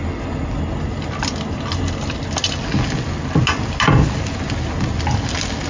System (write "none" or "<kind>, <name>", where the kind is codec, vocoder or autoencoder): none